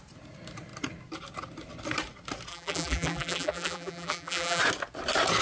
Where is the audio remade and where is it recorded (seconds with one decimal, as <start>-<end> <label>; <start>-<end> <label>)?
0.0-2.5 recorded; 2.5-4.6 remade; 4.6-5.4 recorded